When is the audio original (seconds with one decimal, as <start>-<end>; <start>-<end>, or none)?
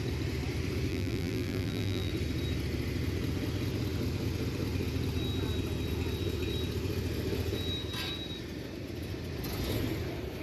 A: 0.0-0.9; 2.1-10.4